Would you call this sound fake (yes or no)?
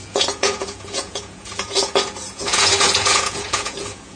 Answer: yes